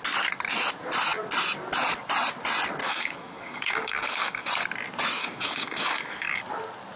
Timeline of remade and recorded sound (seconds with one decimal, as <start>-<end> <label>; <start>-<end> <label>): 0.0-2.8 recorded; 2.8-4.5 remade; 4.5-5.2 recorded; 5.2-6.4 remade; 6.4-7.0 recorded